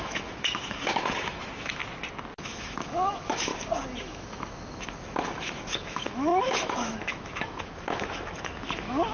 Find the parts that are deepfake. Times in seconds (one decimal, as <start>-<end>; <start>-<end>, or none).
0.0-1.8; 2.4-3.5; 4.0-9.1